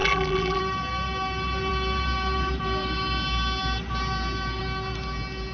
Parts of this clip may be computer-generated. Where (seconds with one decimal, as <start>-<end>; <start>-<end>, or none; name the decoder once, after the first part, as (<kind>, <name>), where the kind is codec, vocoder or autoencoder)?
0.0-0.6 (vocoder, BigVGAN v2)